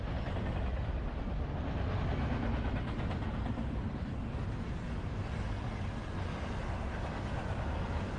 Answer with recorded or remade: recorded